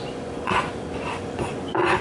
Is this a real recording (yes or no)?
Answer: no